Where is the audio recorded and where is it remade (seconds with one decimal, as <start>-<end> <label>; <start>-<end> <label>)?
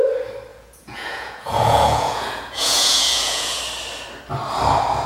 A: 0.0-0.5 recorded; 0.5-3.6 remade; 3.6-5.1 recorded